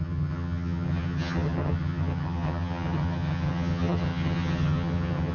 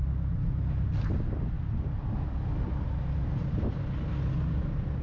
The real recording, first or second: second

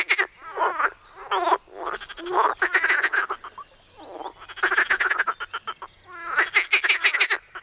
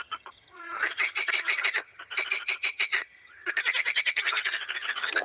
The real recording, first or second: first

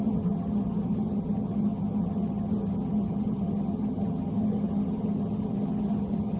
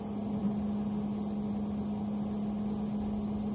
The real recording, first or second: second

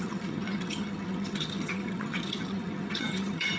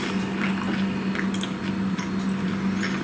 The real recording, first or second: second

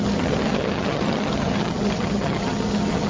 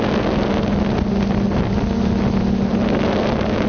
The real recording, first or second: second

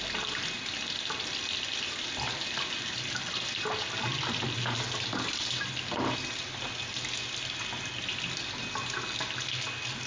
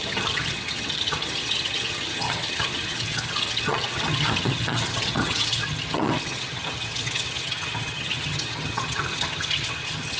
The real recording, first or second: first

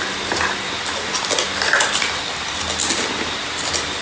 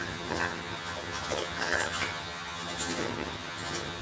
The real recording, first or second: first